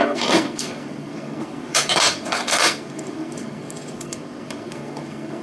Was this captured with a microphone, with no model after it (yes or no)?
no